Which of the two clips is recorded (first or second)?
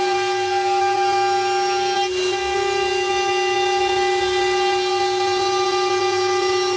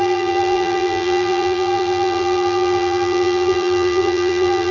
first